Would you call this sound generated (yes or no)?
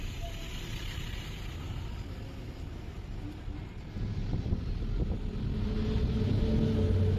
no